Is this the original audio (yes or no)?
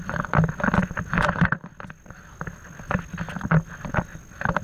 yes